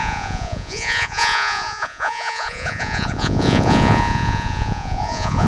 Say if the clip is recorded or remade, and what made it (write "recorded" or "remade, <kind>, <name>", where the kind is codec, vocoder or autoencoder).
remade, vocoder, Vocos